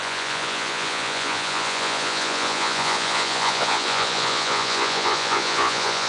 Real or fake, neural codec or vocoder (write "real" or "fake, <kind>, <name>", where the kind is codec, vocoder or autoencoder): fake, vocoder, Vocos